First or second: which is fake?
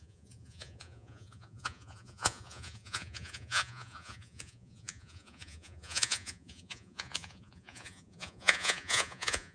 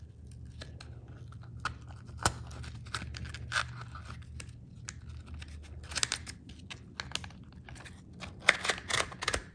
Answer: first